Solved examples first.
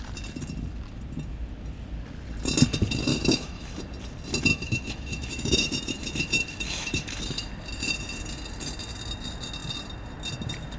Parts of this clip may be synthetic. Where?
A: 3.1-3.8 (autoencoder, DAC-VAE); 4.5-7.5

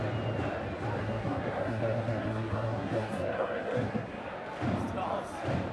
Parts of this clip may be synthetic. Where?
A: 1.0-4.2 (codec, SNAC)

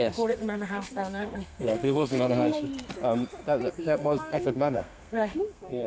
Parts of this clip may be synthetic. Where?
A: 0.0-2.7 (codec, SNAC); 3.7-5.9

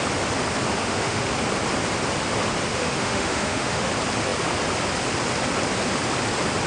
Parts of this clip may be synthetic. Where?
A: 0.8-1.3 (autoencoder, DAC-VAE); 2.7-3.9